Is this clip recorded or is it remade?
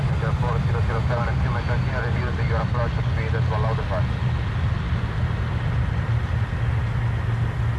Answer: recorded